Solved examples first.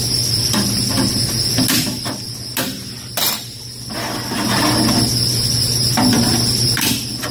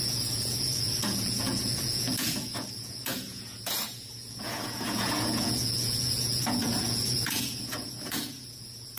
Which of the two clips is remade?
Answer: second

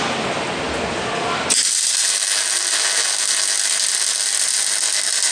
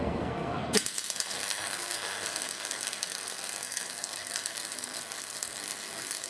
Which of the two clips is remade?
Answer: second